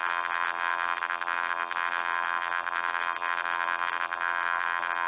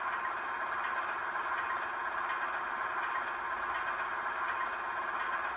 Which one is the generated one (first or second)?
first